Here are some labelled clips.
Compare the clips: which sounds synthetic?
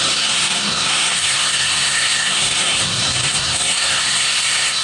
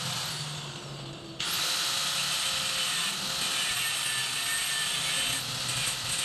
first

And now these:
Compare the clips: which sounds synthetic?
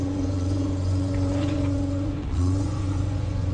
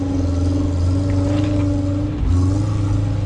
first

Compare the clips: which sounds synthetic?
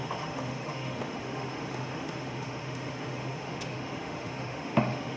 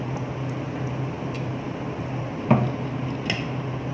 first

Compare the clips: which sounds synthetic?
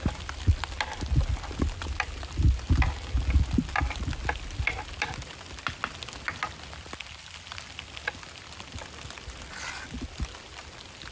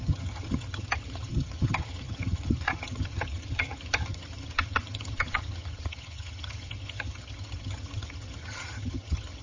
second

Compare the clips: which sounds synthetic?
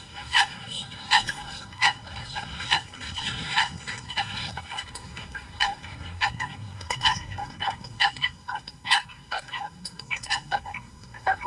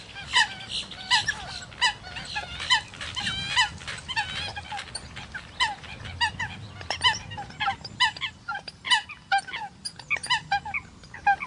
first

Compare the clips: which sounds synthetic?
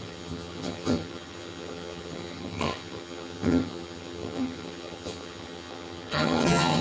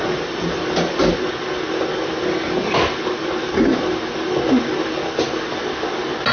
first